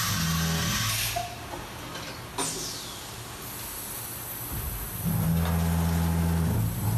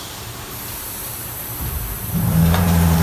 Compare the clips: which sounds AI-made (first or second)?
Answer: second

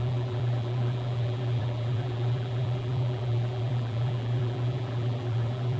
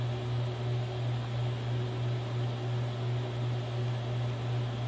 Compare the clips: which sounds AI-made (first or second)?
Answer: first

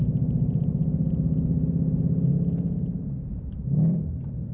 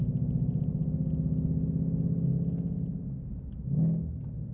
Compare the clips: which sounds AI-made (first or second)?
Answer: first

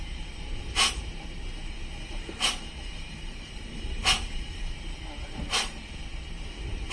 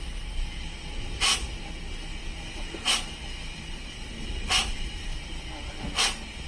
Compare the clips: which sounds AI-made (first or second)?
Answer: first